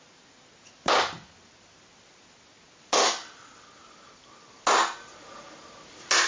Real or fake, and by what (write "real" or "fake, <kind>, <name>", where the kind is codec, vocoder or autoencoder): real